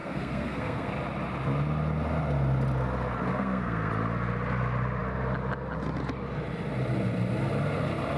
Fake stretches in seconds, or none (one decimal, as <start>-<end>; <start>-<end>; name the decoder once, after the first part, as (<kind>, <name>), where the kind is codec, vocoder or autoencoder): 0.0-0.9 (codec, SNAC); 3.3-3.9